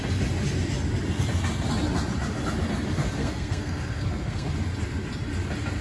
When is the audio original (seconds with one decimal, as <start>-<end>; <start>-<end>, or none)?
0.0-3.2; 4.5-5.8